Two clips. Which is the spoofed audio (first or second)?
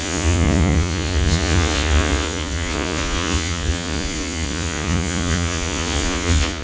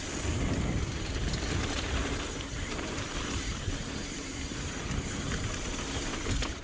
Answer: first